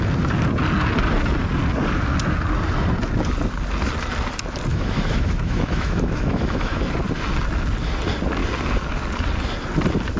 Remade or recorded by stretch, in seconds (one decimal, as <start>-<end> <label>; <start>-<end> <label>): 0.0-4.7 recorded; 4.7-6.8 remade; 6.8-10.2 recorded